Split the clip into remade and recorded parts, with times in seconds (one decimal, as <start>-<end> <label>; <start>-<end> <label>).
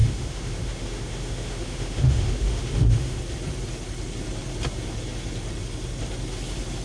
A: 0.0-3.2 remade; 3.2-6.8 recorded